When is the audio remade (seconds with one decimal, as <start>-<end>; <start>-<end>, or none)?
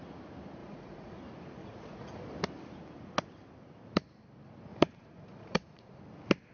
0.6-1.2; 1.6-2.2; 4.7-6.0